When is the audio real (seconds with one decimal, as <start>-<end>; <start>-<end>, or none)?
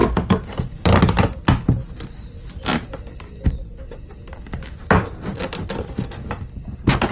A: 0.0-7.1